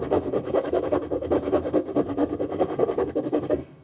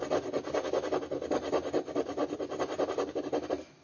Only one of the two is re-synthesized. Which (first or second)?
first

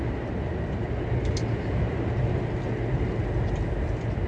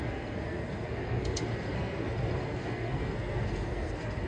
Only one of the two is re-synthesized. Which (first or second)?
second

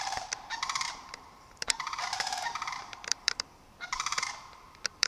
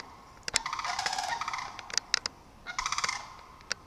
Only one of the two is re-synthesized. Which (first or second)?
first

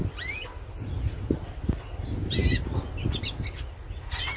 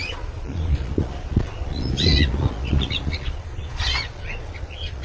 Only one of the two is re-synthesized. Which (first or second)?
second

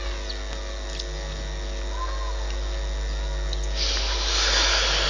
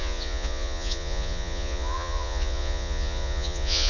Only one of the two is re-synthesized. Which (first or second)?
second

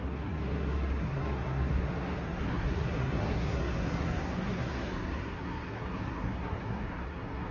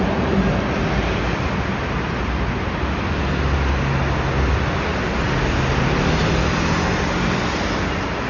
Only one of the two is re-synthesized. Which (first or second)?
first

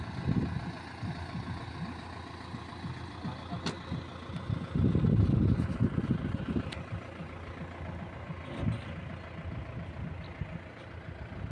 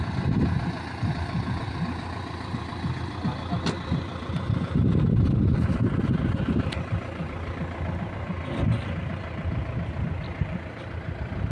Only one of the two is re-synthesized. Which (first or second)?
second